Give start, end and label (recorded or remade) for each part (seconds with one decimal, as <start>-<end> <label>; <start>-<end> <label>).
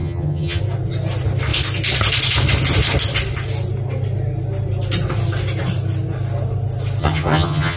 0.0-0.6 remade; 0.6-7.0 recorded; 7.0-7.8 remade